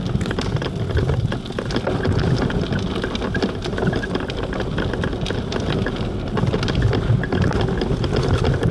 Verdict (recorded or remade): recorded